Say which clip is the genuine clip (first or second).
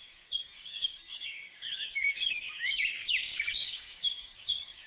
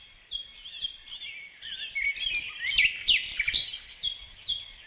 second